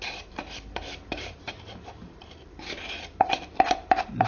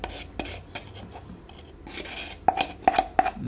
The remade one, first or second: first